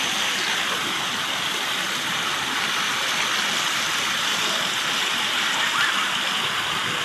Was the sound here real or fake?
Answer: real